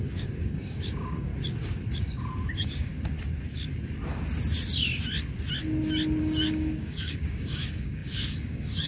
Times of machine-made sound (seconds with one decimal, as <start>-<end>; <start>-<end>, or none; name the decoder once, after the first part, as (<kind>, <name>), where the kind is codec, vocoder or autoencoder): 0.0-1.3 (codec, DAC); 2.0-2.9; 6.2-8.9